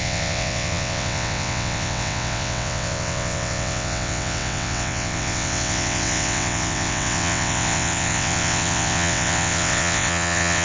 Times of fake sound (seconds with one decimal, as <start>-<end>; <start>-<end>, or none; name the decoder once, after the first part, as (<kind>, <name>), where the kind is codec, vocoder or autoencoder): 0.0-10.6 (vocoder, WaveNeXt)